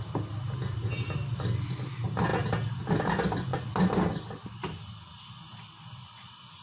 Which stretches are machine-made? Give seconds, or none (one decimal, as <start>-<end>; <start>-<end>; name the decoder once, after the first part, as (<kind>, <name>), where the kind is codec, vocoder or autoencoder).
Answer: none